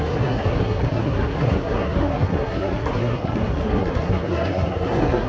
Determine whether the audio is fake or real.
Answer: fake